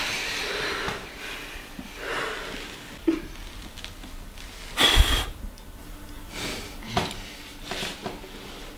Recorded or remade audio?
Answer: recorded